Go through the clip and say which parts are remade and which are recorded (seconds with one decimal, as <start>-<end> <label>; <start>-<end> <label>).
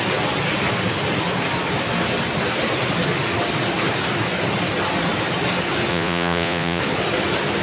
0.0-5.9 recorded; 5.9-6.8 remade; 6.8-7.6 recorded